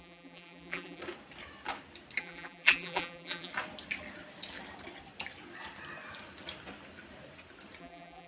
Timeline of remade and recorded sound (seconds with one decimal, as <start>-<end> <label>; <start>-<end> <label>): 0.0-1.0 remade; 1.0-2.2 recorded; 2.2-3.5 remade; 3.5-7.8 recorded; 7.8-8.3 remade